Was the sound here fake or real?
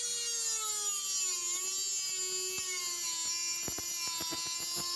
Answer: real